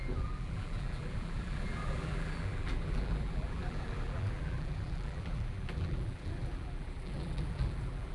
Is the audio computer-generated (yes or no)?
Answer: yes